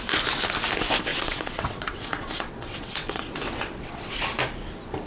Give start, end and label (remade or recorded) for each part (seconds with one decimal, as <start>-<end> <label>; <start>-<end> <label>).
0.0-1.1 recorded; 1.1-4.2 remade; 4.2-5.1 recorded